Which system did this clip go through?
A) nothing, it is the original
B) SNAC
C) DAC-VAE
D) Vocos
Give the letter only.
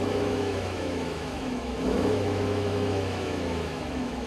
C